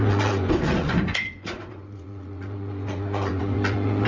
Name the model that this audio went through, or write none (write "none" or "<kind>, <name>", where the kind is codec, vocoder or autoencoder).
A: vocoder, Vocos